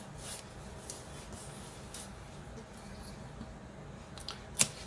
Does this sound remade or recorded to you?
recorded